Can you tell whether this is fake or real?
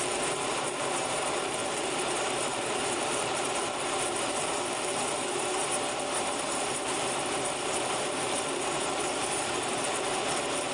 fake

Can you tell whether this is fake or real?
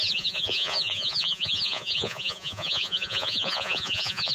fake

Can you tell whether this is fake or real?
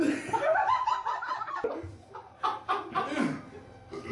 real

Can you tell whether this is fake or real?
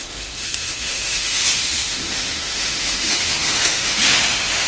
fake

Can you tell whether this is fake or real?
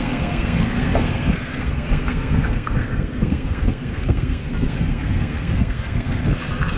fake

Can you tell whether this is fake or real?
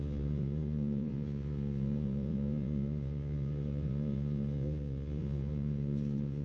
fake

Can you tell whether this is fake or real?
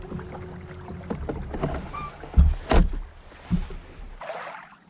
real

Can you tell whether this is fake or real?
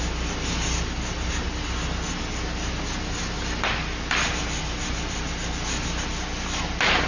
real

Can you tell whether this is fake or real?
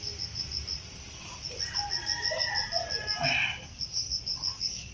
real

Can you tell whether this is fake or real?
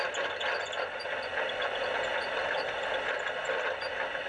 real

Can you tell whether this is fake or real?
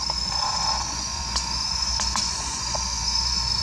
fake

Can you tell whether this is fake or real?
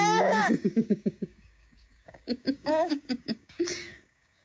fake